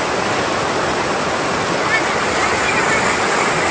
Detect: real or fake real